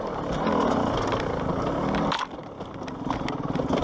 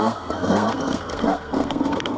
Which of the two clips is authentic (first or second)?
first